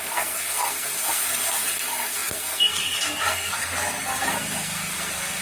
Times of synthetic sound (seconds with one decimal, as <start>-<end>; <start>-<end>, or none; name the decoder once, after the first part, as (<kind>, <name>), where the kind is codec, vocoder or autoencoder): 0.0-5.4 (codec, SNAC)